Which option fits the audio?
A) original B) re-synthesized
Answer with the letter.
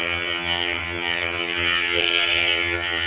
B